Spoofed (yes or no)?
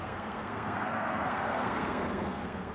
yes